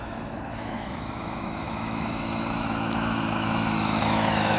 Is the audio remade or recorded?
remade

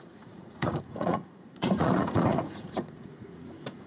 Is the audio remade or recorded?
remade